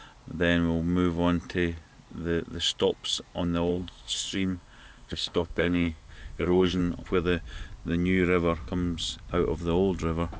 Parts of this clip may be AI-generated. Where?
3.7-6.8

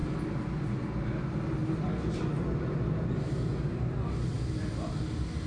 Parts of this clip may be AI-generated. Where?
none

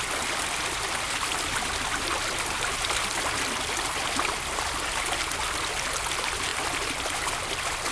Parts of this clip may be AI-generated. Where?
none

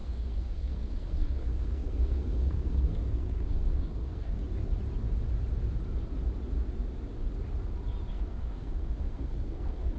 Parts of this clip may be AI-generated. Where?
0.0-4.4; 8.1-10.0

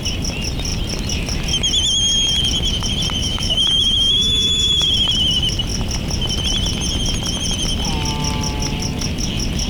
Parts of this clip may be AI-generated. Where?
3.2-4.9

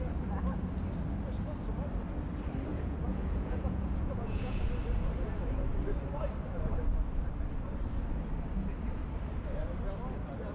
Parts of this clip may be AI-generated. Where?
2.7-4.6

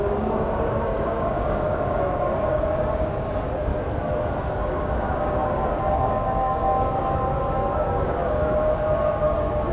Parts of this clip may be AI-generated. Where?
0.0-3.7; 4.4-9.7